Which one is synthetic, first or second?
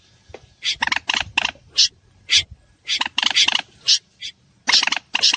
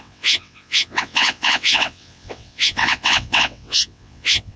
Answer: second